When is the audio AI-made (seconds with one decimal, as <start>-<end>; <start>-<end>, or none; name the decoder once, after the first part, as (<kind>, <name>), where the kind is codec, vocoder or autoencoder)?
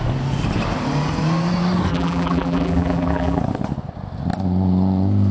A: 1.9-3.4 (vocoder, BigVGAN v2)